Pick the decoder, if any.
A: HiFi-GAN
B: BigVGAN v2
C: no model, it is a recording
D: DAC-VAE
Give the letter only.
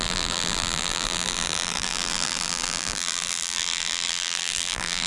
B